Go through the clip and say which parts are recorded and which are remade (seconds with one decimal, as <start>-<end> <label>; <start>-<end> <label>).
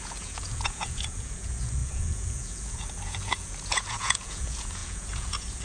0.0-5.6 remade